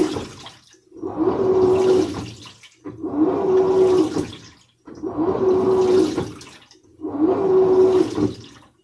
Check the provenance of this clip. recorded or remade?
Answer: recorded